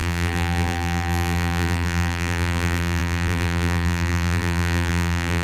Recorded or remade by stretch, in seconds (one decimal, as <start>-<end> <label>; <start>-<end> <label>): 0.0-5.4 remade